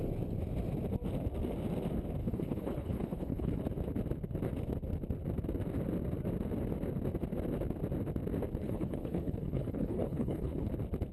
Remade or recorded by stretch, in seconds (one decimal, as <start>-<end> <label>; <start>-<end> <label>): 0.0-2.2 recorded; 2.2-3.6 remade; 3.6-8.6 recorded; 8.6-10.7 remade; 10.7-11.1 recorded